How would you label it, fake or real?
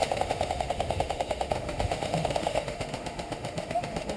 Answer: fake